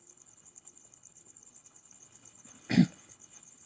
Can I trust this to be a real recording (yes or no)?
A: no